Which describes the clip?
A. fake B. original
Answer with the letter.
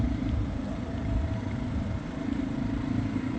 A